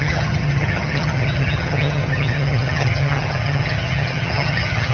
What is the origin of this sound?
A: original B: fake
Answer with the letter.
B